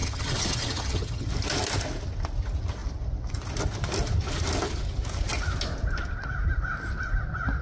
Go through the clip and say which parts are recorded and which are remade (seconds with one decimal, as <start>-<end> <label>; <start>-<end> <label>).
0.0-1.3 remade; 1.3-7.6 recorded